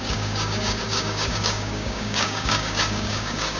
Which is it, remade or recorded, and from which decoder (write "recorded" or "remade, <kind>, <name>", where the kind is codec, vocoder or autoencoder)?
remade, codec, DAC